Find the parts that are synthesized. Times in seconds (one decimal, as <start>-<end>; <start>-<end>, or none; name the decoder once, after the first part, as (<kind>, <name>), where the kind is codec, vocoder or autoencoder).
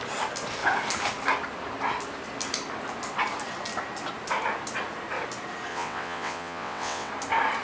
5.7-7.1 (vocoder, WaveNeXt)